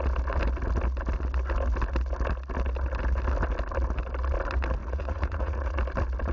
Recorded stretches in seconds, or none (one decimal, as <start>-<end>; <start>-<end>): 0.0-4.8; 5.8-6.3